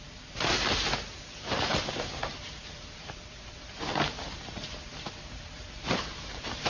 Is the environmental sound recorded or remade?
remade